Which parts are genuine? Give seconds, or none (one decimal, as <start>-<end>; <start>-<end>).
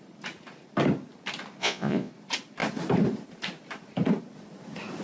0.0-1.6; 2.1-5.0